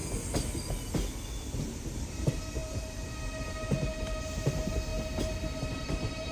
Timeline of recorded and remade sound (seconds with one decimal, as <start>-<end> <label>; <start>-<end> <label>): 0.0-1.6 recorded; 1.6-6.3 remade